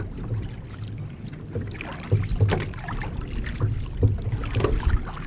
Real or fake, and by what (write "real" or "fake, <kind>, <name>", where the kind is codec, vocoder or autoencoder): real